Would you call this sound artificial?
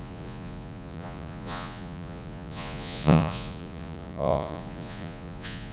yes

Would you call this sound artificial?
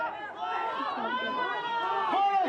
no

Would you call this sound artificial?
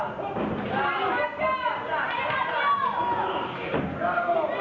no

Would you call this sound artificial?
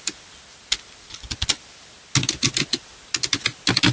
no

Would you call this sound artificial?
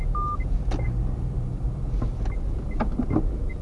no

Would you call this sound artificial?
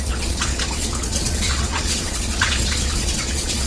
yes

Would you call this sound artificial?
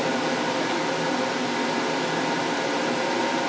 no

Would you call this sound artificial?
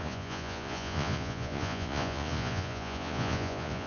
yes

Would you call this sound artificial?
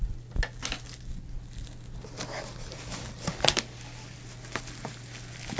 no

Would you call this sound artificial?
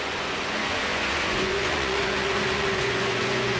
yes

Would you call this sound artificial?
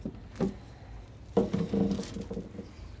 no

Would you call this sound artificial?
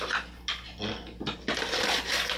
no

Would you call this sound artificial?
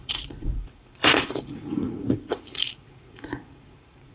yes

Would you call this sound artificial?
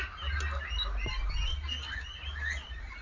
no